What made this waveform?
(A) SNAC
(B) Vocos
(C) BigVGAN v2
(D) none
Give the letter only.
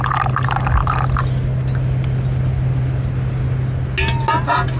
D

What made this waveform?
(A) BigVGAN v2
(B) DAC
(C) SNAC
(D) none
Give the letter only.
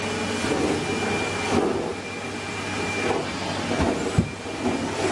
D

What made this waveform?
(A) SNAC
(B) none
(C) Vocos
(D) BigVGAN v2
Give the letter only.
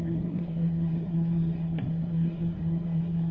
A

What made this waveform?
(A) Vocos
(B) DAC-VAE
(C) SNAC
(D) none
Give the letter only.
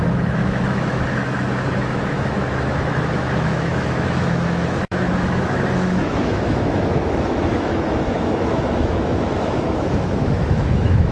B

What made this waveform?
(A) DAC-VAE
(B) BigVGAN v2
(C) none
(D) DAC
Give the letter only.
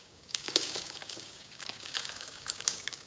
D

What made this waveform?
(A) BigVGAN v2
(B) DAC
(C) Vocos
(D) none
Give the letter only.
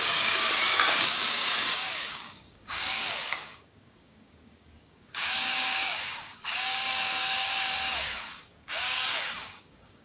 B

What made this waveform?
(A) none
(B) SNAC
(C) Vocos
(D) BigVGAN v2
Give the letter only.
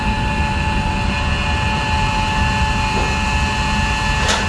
A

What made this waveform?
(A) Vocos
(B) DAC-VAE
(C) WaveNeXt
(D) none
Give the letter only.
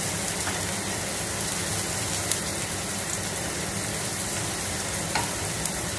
D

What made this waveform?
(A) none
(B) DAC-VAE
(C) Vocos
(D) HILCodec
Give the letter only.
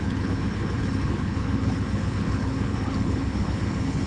D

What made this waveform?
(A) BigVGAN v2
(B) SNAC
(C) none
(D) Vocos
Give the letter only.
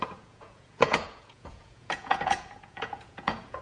D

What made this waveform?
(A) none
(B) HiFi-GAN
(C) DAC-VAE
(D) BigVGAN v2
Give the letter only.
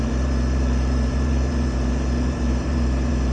D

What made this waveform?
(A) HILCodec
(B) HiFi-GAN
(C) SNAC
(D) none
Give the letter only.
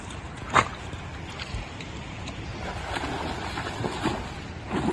D